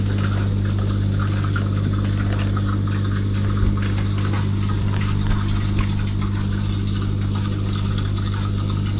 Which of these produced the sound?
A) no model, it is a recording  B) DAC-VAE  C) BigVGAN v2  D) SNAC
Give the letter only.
A